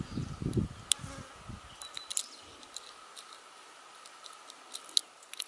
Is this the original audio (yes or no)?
yes